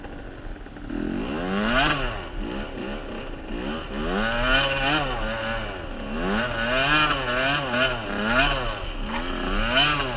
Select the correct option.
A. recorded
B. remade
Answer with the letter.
A